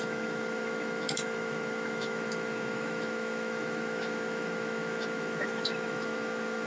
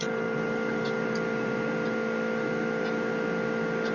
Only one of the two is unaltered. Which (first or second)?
second